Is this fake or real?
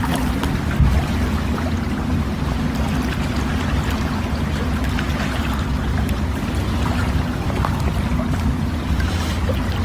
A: real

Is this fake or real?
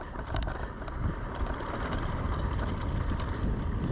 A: fake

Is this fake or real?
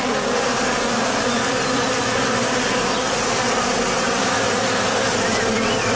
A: fake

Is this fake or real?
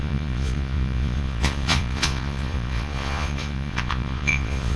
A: fake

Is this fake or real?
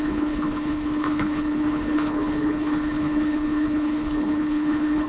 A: fake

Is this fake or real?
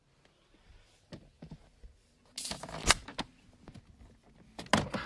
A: real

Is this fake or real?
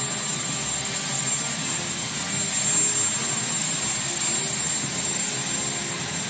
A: real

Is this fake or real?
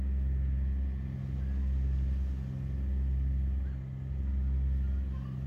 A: real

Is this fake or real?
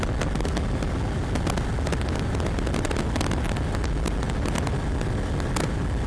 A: real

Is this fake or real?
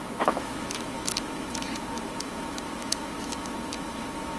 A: fake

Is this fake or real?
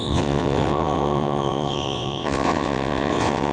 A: fake